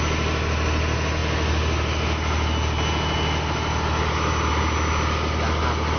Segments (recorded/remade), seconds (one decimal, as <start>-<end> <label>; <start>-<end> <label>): 0.0-6.0 recorded